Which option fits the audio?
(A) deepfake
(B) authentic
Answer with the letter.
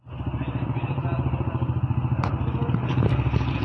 B